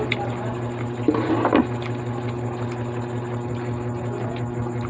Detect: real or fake real